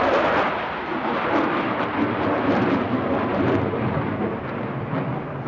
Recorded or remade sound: recorded